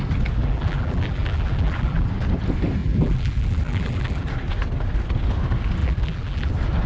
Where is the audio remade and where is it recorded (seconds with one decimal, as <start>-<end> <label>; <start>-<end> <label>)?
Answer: 0.0-0.4 recorded; 0.4-2.1 remade; 2.1-2.8 recorded; 2.8-4.3 remade; 4.3-5.8 recorded; 5.8-6.5 remade; 6.5-6.9 recorded